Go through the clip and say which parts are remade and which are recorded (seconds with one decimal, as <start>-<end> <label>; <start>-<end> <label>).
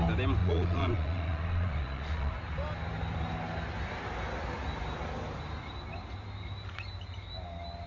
0.0-0.4 recorded; 0.4-2.3 remade; 2.3-7.9 recorded